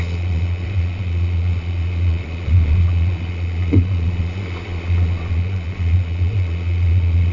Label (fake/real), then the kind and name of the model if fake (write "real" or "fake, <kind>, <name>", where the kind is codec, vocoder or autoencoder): fake, vocoder, Vocos